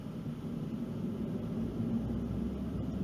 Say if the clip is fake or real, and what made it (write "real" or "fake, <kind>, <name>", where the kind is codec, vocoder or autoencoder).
real